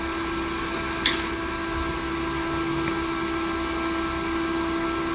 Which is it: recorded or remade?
recorded